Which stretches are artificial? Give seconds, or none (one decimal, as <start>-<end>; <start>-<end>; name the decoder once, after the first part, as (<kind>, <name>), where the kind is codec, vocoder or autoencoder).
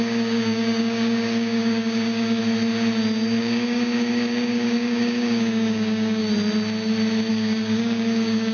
0.0-2.4 (codec, DAC); 3.4-6.2; 7.3-8.5